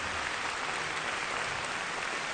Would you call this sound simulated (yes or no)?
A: no